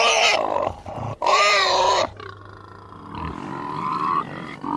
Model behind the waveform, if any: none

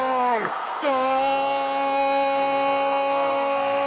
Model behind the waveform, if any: codec, SNAC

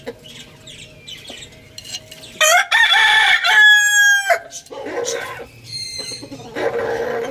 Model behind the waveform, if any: none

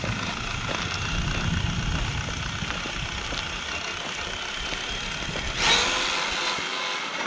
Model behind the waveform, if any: none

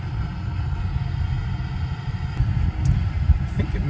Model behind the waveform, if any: none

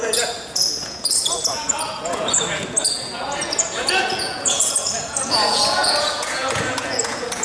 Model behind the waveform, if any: vocoder, Vocos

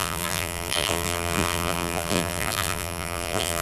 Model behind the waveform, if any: vocoder, BigVGAN v2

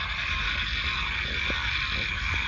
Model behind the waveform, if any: none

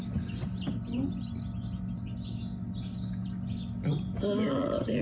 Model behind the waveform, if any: none